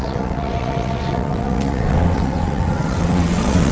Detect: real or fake fake